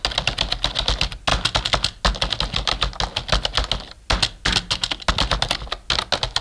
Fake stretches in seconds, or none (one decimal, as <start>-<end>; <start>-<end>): none